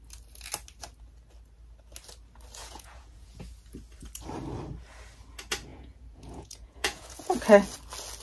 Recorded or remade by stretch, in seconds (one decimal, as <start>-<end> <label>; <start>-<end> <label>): 0.0-2.6 recorded; 2.6-3.4 remade; 3.4-5.7 recorded; 5.7-7.4 remade; 7.4-8.2 recorded